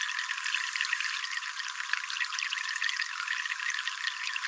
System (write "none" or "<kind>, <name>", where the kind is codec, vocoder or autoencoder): none